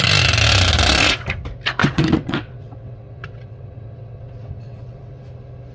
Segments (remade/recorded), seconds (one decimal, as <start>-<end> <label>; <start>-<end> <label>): 0.0-1.8 recorded; 1.8-5.2 remade; 5.2-5.7 recorded